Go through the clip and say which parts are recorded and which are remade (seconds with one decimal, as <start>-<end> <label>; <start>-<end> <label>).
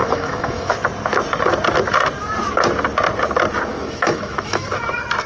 0.0-0.7 remade; 0.7-3.7 recorded; 3.7-4.8 remade; 4.8-5.3 recorded